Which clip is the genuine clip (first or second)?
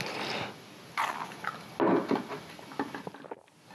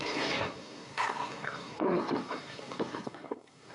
first